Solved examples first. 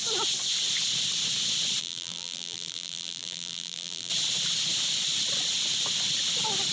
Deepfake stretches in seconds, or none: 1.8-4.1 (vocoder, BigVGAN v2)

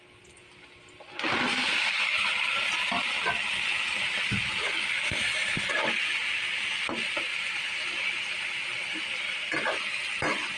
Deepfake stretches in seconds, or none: 1.3-5.7 (vocoder, BigVGAN v2); 6.2-7.2